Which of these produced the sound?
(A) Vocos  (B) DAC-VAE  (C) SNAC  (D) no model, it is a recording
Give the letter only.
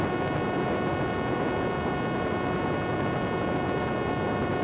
D